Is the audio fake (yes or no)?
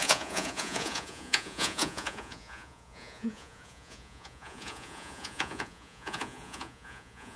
yes